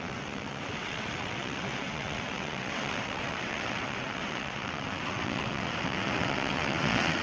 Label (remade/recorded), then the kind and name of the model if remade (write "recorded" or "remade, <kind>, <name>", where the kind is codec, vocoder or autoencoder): remade, vocoder, WaveNeXt